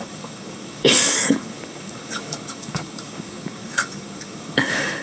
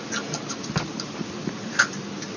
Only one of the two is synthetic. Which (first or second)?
first